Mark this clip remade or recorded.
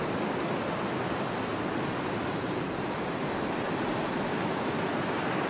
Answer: recorded